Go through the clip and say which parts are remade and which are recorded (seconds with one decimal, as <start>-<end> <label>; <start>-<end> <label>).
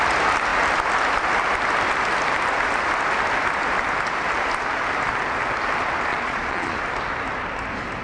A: 0.0-6.1 recorded; 6.1-6.8 remade; 6.8-8.0 recorded